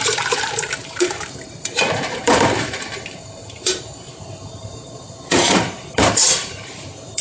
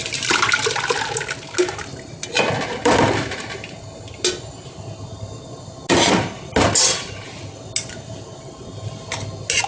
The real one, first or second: second